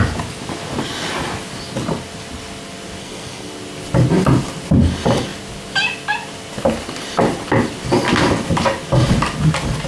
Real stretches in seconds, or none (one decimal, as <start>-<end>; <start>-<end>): 0.0-3.0; 3.5-9.9